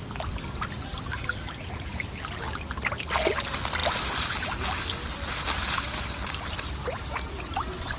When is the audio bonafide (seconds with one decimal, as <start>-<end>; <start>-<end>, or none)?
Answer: 0.0-8.0

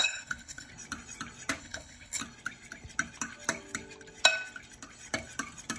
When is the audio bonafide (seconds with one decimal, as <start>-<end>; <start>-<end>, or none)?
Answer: 0.7-1.6; 2.2-5.8

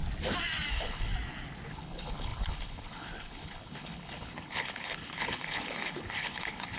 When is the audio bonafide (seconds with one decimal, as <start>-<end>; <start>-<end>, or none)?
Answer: 0.0-0.7; 1.1-1.7

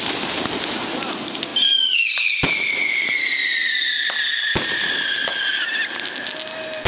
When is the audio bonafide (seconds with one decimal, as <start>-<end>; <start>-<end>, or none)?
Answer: 0.0-6.9

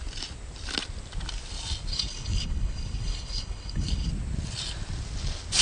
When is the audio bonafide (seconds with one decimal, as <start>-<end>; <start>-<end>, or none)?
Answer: 0.0-1.9; 4.1-5.6

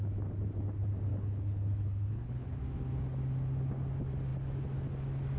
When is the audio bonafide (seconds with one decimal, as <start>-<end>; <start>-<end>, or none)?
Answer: 0.0-1.1; 2.6-5.4